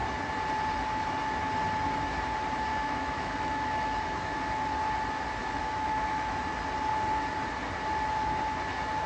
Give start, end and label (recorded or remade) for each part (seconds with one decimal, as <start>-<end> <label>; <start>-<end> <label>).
0.0-2.7 recorded; 2.7-4.4 remade; 4.4-5.4 recorded; 5.4-6.4 remade; 6.4-9.1 recorded